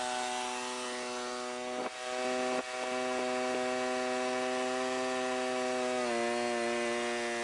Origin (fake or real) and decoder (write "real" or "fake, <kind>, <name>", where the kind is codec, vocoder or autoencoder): real